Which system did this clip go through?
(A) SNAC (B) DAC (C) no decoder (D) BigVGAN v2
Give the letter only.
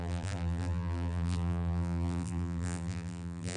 D